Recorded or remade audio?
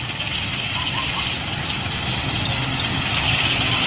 recorded